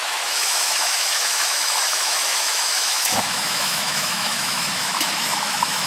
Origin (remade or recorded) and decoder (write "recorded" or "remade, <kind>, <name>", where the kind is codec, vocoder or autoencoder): remade, autoencoder, DAC-VAE